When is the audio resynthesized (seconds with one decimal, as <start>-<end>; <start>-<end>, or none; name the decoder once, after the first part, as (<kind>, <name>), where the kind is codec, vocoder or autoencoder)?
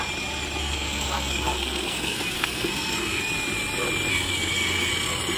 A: 0.6-3.2 (codec, SNAC); 4.1-4.9